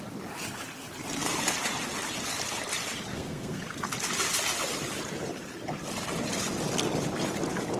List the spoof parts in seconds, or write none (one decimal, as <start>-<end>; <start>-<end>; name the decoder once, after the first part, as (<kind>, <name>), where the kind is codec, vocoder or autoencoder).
3.1-3.6 (codec, SNAC)